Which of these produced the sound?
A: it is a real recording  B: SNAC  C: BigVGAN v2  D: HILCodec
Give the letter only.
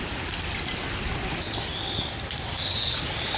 A